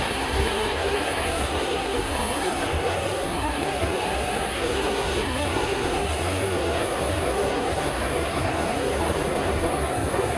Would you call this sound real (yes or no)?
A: no